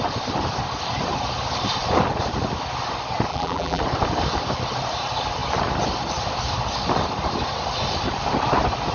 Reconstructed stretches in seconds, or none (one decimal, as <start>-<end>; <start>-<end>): 3.3-3.8